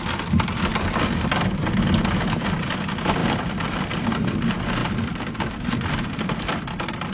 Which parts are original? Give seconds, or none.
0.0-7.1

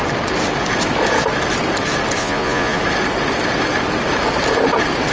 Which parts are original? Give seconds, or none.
0.0-2.2; 2.8-5.1

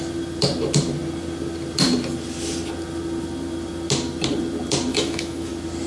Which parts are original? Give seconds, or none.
0.0-4.9; 5.5-5.9